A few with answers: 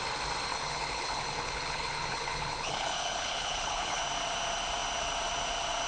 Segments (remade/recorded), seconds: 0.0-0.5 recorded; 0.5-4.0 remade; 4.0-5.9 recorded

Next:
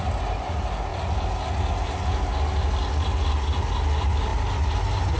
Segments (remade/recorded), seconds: 0.0-5.2 recorded